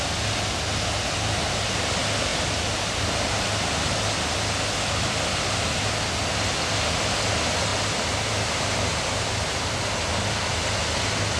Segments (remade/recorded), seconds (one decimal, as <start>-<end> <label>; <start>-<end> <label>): 0.0-11.4 recorded